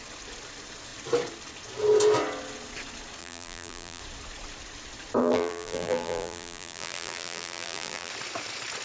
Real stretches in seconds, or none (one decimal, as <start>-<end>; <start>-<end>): 0.0-3.2; 4.0-5.2; 8.1-8.8